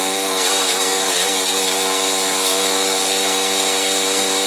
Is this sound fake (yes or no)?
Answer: yes